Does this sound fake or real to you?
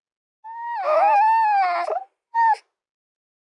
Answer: real